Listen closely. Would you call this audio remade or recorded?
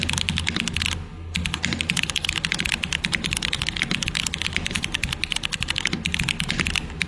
recorded